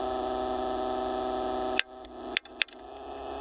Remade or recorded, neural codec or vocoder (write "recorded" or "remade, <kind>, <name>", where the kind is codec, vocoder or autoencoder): recorded